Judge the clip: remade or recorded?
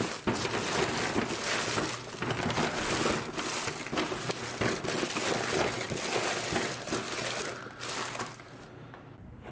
recorded